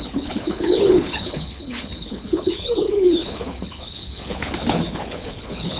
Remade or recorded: remade